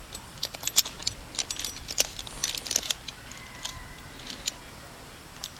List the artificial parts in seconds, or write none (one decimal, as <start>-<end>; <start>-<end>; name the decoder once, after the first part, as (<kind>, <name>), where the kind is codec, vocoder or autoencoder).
0.0-1.0 (vocoder, BigVGAN v2); 1.8-2.4; 4.7-5.6